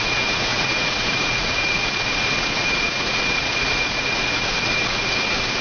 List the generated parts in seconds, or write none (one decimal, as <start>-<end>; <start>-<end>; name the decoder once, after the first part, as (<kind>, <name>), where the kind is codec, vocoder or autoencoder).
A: 0.0-5.6 (vocoder, Vocos)